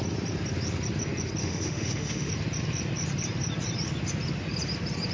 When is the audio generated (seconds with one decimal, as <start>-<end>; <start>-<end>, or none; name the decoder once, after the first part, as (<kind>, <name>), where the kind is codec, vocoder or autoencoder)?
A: 1.4-2.3 (autoencoder, DAC-VAE)